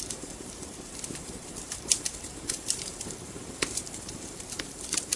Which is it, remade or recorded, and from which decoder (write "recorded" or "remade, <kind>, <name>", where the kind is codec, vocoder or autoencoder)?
remade, vocoder, BigVGAN v2